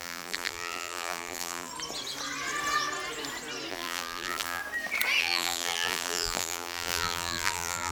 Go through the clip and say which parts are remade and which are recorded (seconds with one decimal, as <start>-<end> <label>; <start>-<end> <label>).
0.0-1.7 remade; 1.7-3.7 recorded; 3.7-4.6 remade; 4.6-5.2 recorded; 5.2-7.9 remade